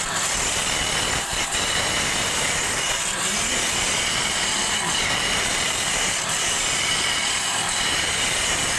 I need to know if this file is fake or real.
fake